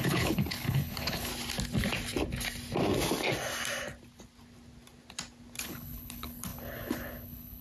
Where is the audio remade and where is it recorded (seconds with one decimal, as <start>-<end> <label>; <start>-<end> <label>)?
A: 0.0-1.3 remade; 1.3-5.6 recorded; 5.6-7.6 remade